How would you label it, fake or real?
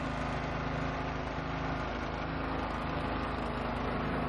real